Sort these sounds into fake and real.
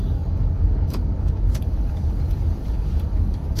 fake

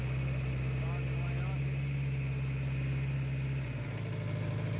real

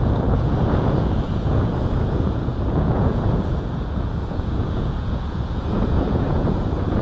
fake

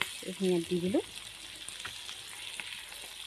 real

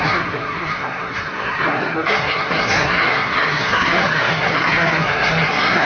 fake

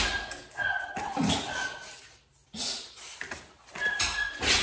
real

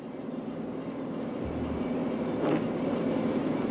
real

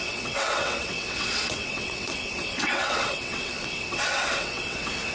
fake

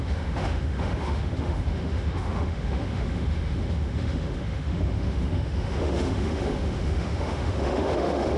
fake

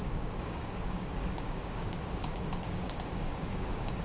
fake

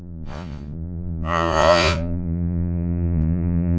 fake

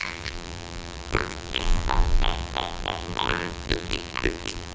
fake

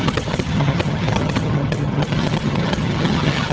fake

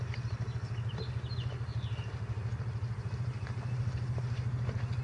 real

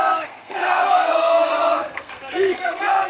fake